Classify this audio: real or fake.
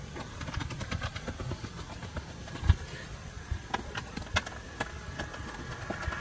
real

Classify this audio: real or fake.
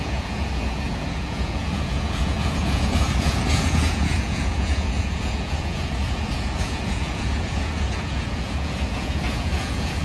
fake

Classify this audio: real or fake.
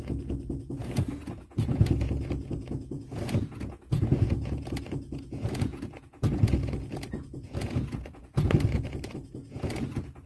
fake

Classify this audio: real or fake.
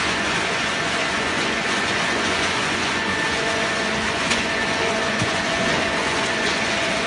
fake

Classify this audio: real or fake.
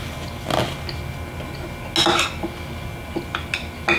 real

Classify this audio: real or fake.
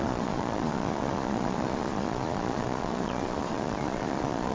fake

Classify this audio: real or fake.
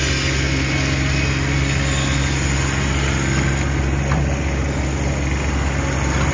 real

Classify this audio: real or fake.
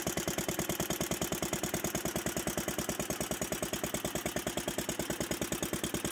real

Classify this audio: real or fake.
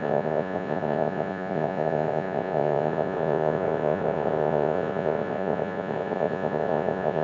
fake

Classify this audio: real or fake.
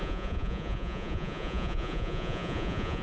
fake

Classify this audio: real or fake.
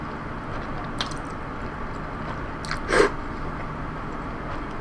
real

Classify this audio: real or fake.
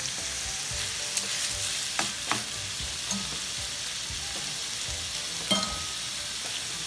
real